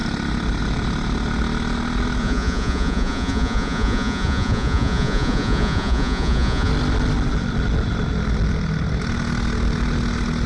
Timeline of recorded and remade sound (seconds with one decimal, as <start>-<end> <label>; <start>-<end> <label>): 0.0-2.2 recorded; 2.2-6.7 remade; 6.7-10.5 recorded